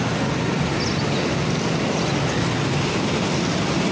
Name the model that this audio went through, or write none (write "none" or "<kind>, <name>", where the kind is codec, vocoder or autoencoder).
none